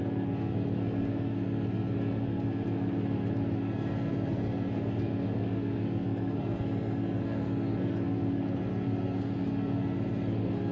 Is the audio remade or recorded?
remade